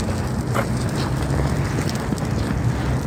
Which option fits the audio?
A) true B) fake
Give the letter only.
A